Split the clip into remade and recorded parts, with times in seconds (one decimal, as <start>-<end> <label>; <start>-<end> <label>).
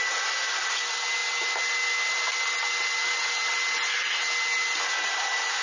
0.0-5.6 recorded